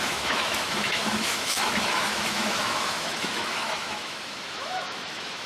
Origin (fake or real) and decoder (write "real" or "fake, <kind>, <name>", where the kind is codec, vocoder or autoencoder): fake, autoencoder, DAC-VAE